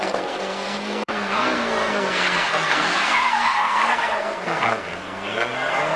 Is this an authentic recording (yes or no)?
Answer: no